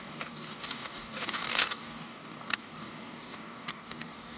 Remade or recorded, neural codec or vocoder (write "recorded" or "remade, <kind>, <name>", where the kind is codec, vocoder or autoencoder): remade, codec, DAC